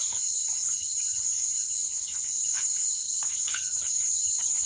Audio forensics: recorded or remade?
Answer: remade